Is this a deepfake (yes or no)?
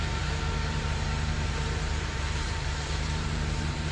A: yes